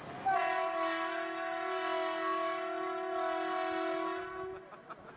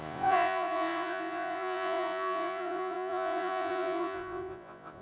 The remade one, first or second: second